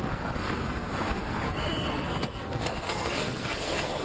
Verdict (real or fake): fake